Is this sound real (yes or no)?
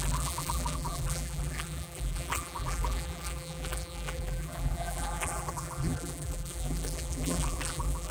no